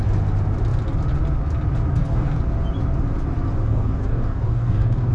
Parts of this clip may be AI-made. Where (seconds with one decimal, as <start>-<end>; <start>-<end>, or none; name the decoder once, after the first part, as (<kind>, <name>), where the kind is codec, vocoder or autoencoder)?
1.9-2.4 (codec, DAC); 3.7-5.1